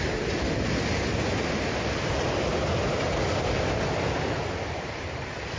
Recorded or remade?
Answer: recorded